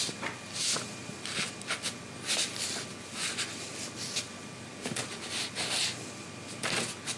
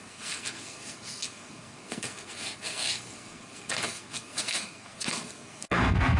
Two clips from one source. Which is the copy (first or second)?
second